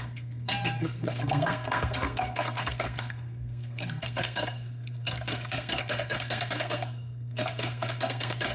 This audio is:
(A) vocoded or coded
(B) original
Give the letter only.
A